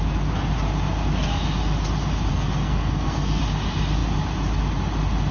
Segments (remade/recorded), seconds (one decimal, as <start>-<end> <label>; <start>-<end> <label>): 0.0-2.3 recorded; 2.3-3.4 remade; 3.4-5.3 recorded